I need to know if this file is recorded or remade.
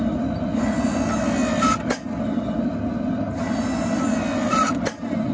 recorded